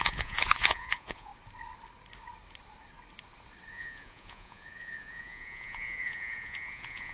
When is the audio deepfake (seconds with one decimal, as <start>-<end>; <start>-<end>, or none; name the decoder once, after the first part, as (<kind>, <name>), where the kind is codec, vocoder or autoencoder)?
0.0-1.3 (vocoder, Vocos); 3.7-7.1